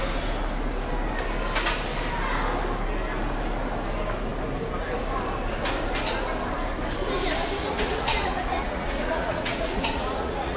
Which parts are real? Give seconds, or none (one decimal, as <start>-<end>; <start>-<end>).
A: 0.0-7.6